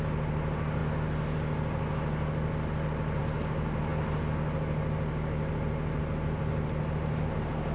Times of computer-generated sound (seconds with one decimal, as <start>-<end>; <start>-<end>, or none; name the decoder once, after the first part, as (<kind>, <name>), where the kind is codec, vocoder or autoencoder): none